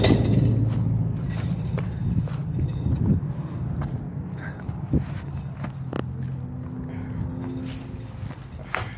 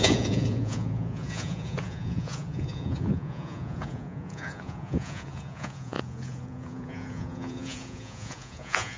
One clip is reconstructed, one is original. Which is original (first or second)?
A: first